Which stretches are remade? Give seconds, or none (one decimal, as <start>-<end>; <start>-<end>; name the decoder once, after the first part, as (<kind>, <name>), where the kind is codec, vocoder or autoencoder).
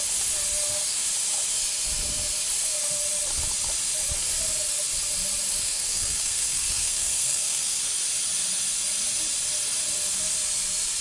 5.6-7.8 (codec, SNAC)